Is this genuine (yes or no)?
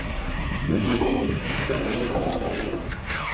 no